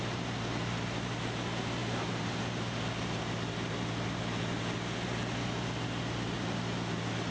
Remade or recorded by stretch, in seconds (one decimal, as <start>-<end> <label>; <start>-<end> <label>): 0.0-7.3 recorded